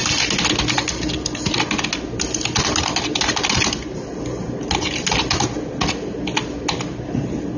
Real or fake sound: real